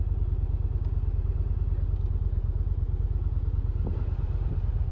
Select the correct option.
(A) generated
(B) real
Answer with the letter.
B